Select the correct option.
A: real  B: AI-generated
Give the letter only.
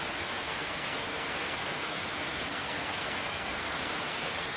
B